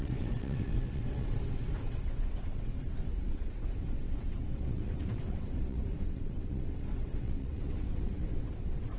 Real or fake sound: fake